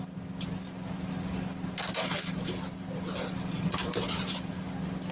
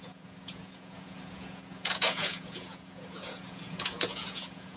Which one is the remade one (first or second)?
second